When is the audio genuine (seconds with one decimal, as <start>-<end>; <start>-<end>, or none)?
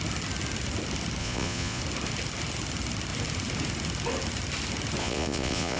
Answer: 0.0-1.2; 1.8-5.0